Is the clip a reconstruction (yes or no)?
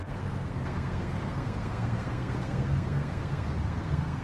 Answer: yes